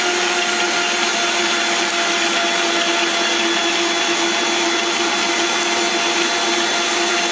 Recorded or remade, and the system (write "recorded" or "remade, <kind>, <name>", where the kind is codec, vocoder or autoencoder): recorded